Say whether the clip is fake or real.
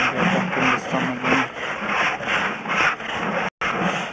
real